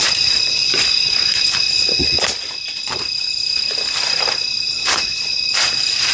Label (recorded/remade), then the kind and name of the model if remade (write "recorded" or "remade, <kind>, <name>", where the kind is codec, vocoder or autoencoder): recorded